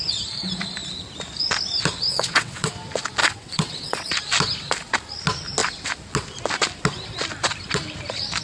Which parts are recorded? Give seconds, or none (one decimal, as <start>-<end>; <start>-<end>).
0.0-2.1; 2.7-3.2; 4.1-8.4